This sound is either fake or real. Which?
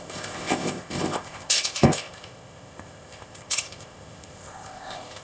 fake